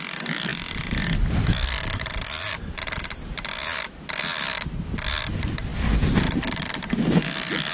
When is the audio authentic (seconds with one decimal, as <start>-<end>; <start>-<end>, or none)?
0.0-7.7